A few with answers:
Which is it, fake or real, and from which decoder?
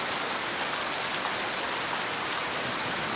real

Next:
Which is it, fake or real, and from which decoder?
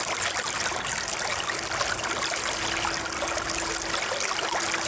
real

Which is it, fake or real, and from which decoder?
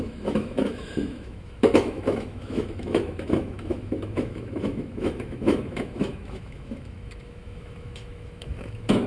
fake, autoencoder, DAC-VAE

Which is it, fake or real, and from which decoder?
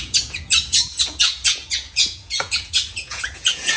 fake, vocoder, Vocos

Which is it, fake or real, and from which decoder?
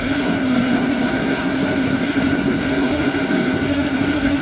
fake, codec, SNAC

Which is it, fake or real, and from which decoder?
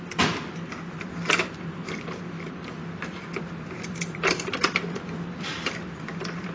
fake, vocoder, BigVGAN v2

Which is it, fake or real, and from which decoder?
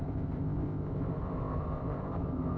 fake, codec, ZipCodec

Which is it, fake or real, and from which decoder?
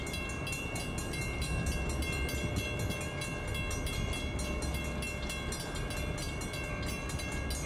real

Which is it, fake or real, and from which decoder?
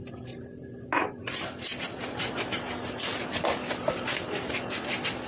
real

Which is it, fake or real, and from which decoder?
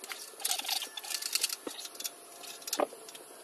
real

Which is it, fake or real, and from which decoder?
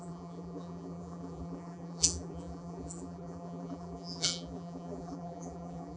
fake, vocoder, BigVGAN v2